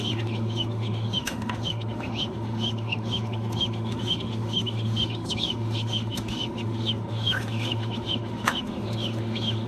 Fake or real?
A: fake